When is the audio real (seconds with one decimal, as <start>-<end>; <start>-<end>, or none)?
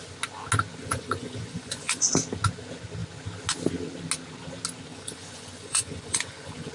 0.0-0.8; 2.1-4.9